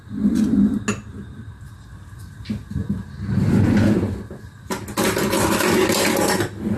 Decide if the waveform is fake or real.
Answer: real